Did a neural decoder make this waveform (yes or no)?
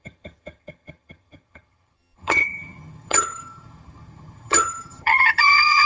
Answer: yes